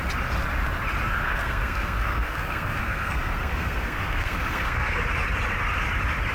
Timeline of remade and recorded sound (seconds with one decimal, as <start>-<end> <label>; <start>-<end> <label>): 0.0-1.2 recorded; 1.2-5.0 remade; 5.0-6.3 recorded